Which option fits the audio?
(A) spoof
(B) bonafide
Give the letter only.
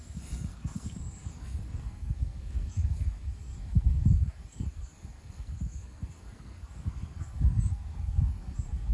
A